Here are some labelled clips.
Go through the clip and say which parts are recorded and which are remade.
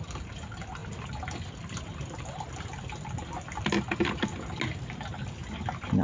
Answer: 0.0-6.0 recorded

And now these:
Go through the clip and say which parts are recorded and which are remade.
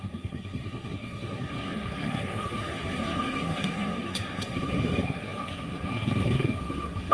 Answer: 0.0-7.1 remade